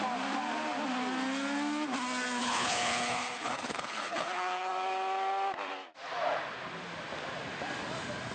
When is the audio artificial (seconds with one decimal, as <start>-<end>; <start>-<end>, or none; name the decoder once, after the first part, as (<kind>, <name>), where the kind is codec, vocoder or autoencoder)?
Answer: 2.4-4.7 (codec, HILCodec)